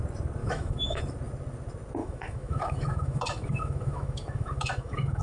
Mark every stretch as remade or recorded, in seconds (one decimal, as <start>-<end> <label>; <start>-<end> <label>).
0.0-0.4 recorded; 0.4-1.0 remade; 1.0-2.0 recorded; 2.0-5.2 remade